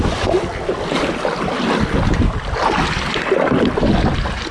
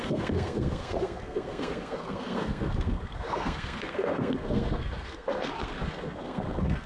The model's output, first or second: second